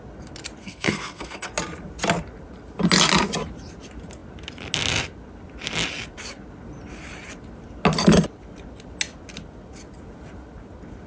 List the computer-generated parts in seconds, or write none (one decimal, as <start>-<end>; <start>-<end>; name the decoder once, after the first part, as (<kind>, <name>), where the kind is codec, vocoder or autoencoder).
0.6-1.5 (codec, SNAC)